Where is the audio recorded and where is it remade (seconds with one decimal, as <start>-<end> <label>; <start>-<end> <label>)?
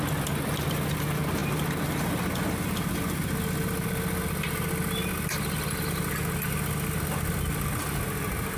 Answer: 0.0-8.6 recorded